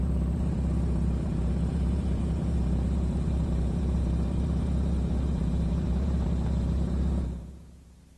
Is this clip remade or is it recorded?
remade